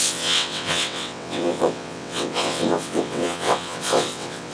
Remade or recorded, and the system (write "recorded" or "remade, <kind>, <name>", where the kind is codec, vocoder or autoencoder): remade, vocoder, WaveNeXt